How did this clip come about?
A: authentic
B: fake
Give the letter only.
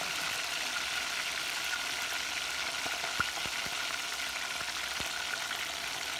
A